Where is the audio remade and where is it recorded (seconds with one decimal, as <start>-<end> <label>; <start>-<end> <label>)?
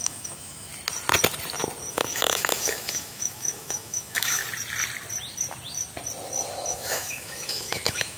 0.0-0.7 remade; 0.7-1.9 recorded; 1.9-4.4 remade; 4.4-6.7 recorded; 6.7-8.2 remade